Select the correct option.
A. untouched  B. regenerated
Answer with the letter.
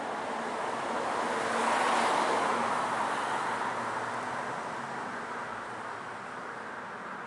A